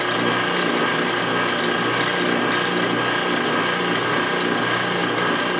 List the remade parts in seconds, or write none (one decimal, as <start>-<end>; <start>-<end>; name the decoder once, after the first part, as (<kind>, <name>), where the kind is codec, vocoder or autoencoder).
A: none